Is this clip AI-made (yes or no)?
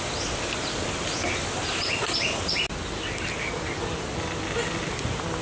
no